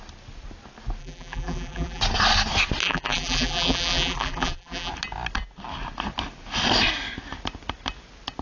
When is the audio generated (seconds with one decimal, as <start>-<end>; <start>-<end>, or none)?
1.0-2.0; 2.8-4.9